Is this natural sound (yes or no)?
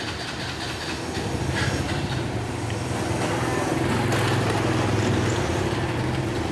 yes